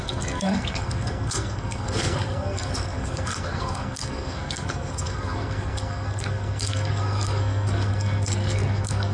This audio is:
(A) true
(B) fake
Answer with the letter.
B